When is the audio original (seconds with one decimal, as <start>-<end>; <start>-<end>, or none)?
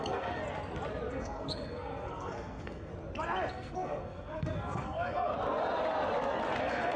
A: 0.4-1.1; 2.9-3.5; 5.3-6.6